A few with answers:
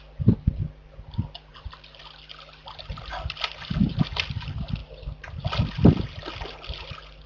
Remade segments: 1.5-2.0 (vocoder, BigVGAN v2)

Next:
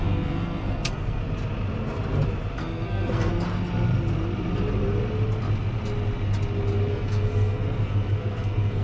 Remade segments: 0.0-1.2 (codec, SNAC); 2.6-3.3; 6.9-8.8